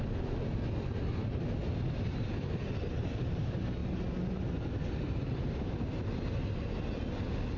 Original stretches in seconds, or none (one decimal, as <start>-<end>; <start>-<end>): 0.0-7.6